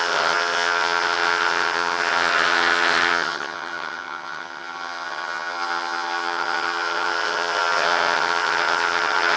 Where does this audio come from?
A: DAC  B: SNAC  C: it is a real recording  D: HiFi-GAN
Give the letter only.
D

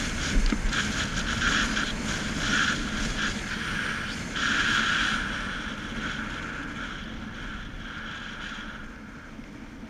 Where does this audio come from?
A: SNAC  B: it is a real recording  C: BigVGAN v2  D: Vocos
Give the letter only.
B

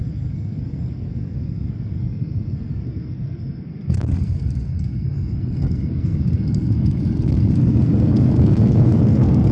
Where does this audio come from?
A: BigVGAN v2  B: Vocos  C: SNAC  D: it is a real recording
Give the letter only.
C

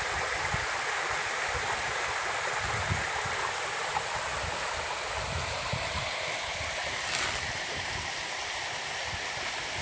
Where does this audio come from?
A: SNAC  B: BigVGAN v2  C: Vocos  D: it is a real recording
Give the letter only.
D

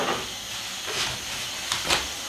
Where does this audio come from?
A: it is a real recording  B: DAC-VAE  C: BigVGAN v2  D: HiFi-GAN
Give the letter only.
A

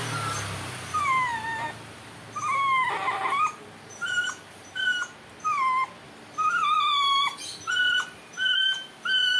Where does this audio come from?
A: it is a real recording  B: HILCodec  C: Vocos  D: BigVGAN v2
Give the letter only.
A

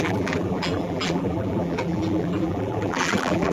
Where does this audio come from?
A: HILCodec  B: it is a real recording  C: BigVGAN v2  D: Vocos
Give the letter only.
C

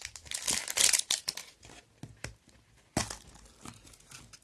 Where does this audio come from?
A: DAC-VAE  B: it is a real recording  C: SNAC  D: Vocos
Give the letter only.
B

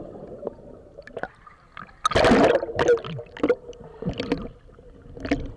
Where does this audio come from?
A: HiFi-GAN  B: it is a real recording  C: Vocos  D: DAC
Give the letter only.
B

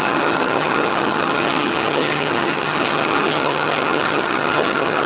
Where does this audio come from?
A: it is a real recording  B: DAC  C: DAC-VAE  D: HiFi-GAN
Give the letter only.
D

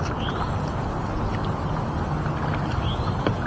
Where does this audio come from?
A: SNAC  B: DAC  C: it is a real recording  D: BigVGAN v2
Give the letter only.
C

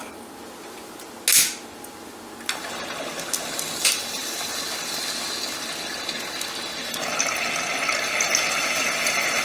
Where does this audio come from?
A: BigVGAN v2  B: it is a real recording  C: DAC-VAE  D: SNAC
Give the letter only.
B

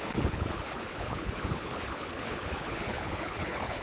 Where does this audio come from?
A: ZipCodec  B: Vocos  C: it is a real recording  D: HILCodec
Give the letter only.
D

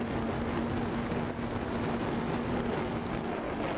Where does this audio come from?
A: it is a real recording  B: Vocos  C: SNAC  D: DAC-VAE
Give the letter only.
A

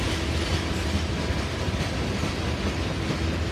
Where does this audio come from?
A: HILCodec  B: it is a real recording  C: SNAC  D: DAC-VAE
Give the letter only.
B